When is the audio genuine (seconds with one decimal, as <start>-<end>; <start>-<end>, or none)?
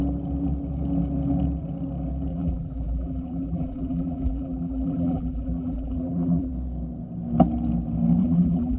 0.0-2.3; 6.5-8.2